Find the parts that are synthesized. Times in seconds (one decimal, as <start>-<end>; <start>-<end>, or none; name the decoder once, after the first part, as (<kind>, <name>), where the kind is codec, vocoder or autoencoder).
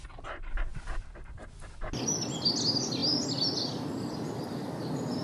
none